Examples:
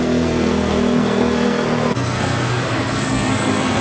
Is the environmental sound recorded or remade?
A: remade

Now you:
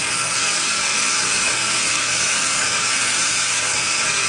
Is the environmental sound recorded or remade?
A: remade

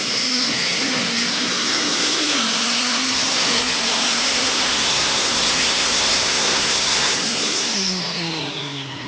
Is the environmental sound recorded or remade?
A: remade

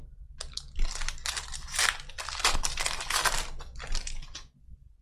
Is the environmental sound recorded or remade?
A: recorded